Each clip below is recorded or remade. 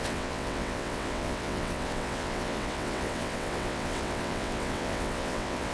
remade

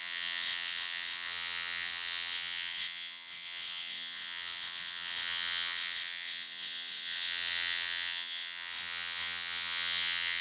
remade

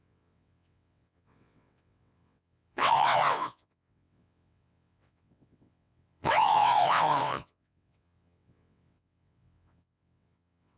remade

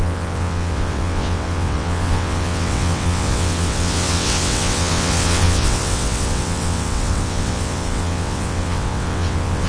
remade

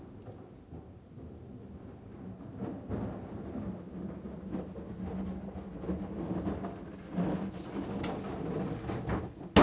recorded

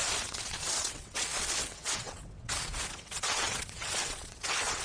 remade